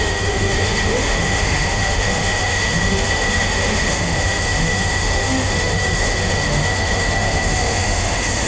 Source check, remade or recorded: remade